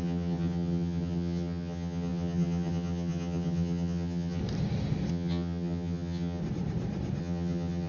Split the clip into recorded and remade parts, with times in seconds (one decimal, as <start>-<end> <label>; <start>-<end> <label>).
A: 0.0-4.4 remade; 4.4-5.1 recorded; 5.1-6.4 remade; 6.4-7.2 recorded; 7.2-7.9 remade

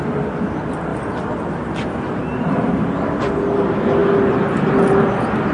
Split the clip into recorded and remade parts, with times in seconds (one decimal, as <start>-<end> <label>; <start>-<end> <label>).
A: 0.0-5.5 recorded

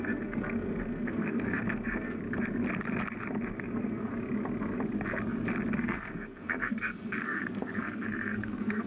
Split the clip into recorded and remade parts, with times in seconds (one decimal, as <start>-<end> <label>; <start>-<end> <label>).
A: 0.0-2.2 remade; 2.2-3.5 recorded; 3.5-4.1 remade; 4.1-5.7 recorded; 5.7-8.9 remade